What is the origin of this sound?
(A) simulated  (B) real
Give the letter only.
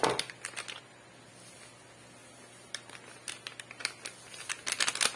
B